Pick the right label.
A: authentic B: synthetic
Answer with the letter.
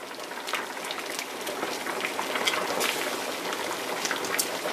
A